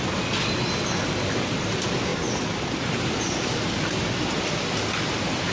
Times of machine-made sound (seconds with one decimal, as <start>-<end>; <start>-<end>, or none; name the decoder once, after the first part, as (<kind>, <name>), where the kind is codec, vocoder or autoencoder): none